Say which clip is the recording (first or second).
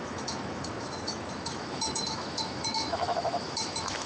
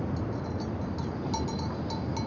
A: second